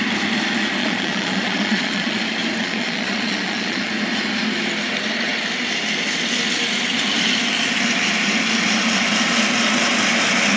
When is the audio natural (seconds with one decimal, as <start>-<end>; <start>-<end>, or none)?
0.0-0.8; 2.2-2.6; 3.9-10.6